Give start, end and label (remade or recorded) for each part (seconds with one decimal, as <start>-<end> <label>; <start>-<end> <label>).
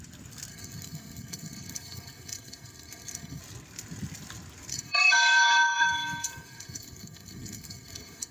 0.0-0.5 recorded; 0.5-3.4 remade; 3.4-4.7 recorded; 4.7-8.3 remade